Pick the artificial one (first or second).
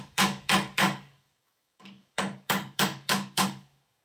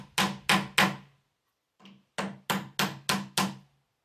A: first